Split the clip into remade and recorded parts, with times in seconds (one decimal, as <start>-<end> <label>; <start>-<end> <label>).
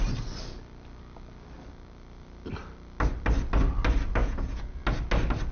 0.0-4.2 recorded; 4.2-4.8 remade; 4.8-5.5 recorded